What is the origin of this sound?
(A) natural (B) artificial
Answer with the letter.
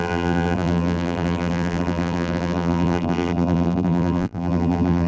B